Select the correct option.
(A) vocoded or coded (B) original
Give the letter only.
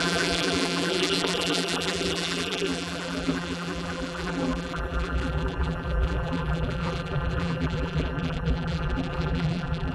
A